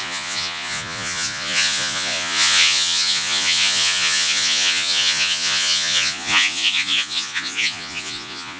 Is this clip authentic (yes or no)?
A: no